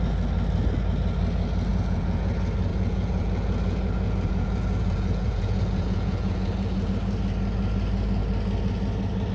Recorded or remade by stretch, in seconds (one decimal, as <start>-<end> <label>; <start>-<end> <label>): 0.0-1.7 recorded; 1.7-2.3 remade; 2.3-2.7 recorded; 2.7-6.9 remade; 6.9-9.3 recorded